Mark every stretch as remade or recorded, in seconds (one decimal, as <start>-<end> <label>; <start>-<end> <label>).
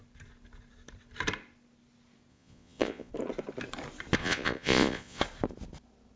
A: 0.0-2.3 recorded; 2.3-3.1 remade; 3.1-4.2 recorded; 4.2-5.2 remade; 5.2-6.2 recorded